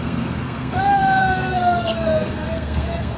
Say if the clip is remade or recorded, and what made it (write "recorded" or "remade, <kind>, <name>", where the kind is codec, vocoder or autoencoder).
remade, codec, SNAC